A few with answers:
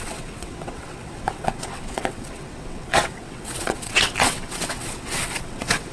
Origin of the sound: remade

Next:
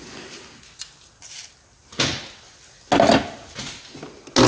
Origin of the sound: recorded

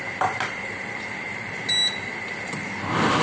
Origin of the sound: recorded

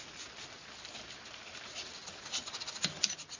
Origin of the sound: recorded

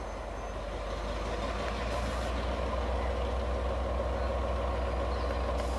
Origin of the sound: recorded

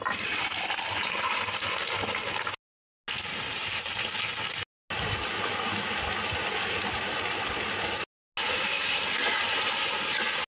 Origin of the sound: recorded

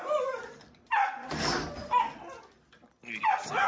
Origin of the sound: recorded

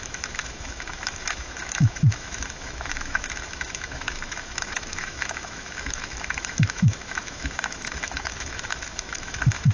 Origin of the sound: remade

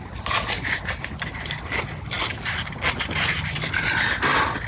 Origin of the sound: recorded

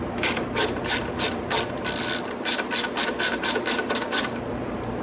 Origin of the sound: remade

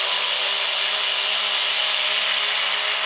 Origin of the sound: recorded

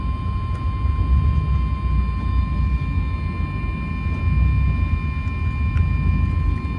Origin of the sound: recorded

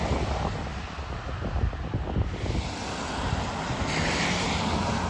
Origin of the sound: recorded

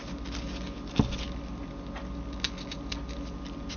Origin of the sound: recorded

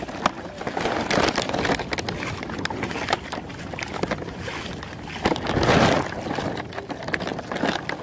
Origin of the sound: recorded